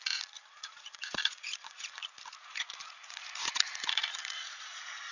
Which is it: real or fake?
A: fake